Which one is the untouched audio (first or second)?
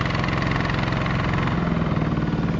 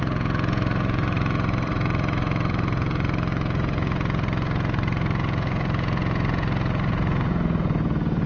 first